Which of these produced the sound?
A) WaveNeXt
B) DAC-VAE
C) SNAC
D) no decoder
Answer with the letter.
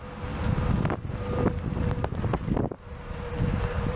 D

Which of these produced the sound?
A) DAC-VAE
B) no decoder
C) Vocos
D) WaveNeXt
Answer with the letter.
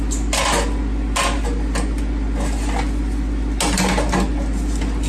B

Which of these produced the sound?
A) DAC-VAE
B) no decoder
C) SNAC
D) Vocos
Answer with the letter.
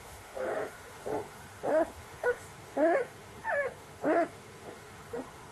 A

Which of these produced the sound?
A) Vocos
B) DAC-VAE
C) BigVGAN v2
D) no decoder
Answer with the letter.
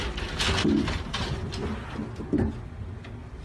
D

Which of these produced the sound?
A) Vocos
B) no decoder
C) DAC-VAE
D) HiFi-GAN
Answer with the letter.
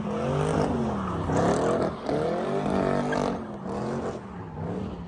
B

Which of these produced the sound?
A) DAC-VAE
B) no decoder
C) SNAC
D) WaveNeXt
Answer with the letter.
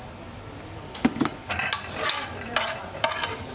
B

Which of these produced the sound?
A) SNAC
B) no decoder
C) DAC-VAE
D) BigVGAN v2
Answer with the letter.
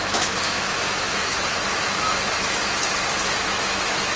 C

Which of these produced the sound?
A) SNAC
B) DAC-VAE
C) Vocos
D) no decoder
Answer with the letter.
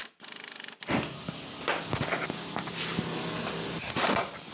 D